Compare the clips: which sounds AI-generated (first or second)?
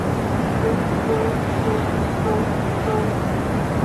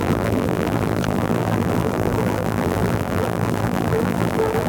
second